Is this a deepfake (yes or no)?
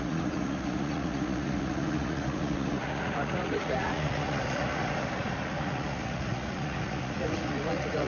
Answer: yes